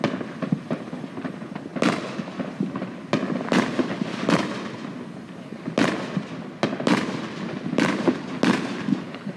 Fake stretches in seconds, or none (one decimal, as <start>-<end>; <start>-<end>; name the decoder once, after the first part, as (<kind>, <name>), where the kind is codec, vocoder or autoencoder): none